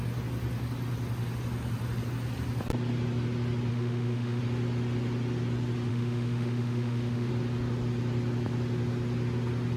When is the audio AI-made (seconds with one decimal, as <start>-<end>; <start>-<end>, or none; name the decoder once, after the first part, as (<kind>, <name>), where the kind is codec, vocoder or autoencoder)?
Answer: 3.7-4.4 (autoencoder, DAC-VAE); 5.9-7.3